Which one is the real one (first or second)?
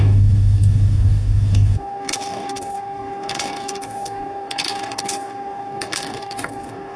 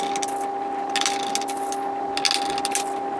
second